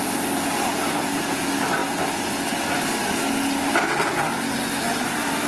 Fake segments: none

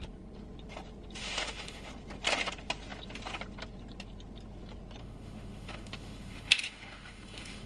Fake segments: 1.2-1.9 (autoencoder, DAC-VAE); 5.0-7.7

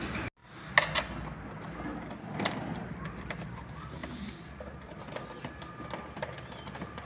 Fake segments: none

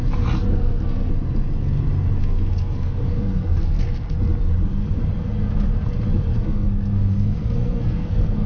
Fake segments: 0.5-1.1 (codec, SNAC); 2.2-4.2; 6.3-8.5

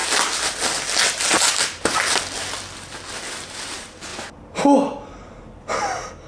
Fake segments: none

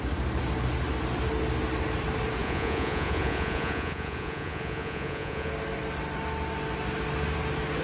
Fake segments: 2.4-5.5 (vocoder, Vocos)

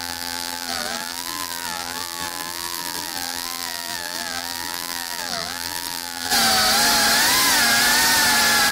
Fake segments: 0.0-6.3 (vocoder, BigVGAN v2)